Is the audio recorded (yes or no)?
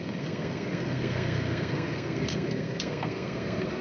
no